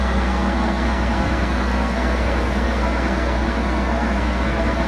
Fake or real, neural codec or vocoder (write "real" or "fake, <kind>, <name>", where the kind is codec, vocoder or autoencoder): fake, codec, SNAC